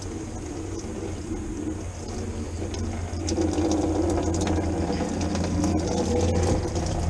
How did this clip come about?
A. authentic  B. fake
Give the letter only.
A